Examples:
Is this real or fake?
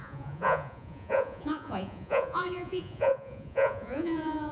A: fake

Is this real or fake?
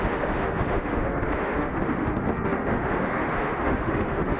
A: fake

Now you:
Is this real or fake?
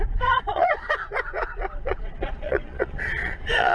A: fake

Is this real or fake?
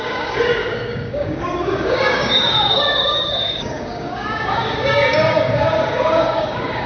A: fake